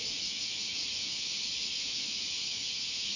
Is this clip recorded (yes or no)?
no